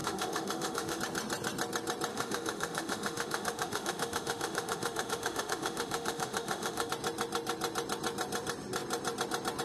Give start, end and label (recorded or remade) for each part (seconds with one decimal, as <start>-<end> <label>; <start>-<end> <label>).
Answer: 0.0-1.0 remade; 1.0-2.1 recorded; 2.1-6.9 remade; 6.9-9.6 recorded